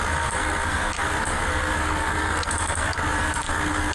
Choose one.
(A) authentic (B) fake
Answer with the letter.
B